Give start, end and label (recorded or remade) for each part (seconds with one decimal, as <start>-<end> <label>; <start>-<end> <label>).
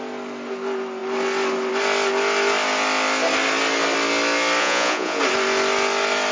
0.0-4.6 recorded; 4.6-5.2 remade; 5.2-6.3 recorded